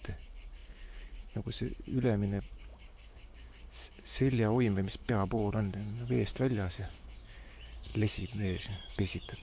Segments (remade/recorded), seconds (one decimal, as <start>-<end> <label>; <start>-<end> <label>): 0.0-9.4 remade